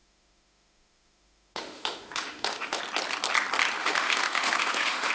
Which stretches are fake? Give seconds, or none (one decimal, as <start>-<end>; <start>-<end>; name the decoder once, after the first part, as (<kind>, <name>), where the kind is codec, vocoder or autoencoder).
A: 0.0-2.8 (autoencoder, DAC-VAE); 3.8-5.1